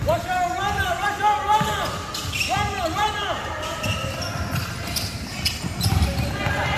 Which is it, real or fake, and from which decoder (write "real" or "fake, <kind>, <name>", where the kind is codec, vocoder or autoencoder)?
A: real